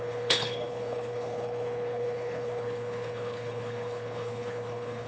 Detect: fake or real fake